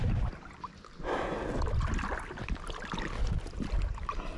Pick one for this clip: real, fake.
real